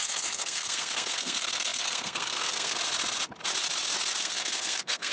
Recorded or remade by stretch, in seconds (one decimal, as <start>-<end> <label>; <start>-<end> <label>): 0.0-2.8 remade; 2.8-4.2 recorded; 4.2-5.1 remade